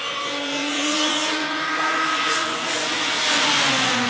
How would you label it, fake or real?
fake